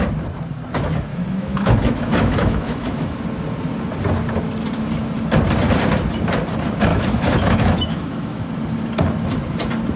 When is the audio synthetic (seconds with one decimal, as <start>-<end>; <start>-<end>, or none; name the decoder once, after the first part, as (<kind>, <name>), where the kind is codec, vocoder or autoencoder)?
1.1-3.2 (autoencoder, DAC-VAE); 6.9-8.4

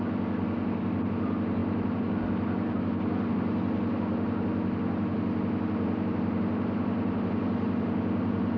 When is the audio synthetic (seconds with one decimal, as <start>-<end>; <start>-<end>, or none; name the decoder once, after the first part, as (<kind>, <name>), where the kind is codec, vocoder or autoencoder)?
none

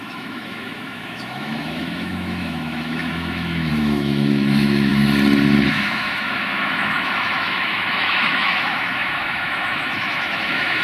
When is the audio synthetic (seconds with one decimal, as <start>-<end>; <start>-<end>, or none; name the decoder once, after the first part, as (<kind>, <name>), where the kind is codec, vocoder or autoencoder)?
0.0-4.9 (autoencoder, DAC-VAE); 5.7-10.8

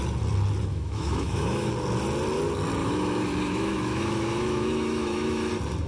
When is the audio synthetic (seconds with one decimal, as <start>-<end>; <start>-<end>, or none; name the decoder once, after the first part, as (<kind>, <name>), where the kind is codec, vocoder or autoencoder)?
0.7-1.7 (autoencoder, DAC-VAE); 2.8-5.5

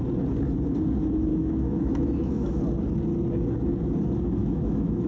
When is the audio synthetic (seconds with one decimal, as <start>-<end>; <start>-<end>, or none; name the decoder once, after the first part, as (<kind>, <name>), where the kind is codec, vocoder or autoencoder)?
1.3-2.6 (autoencoder, DAC-VAE); 4.4-5.1